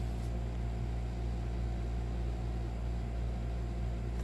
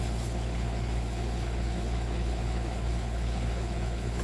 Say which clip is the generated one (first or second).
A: second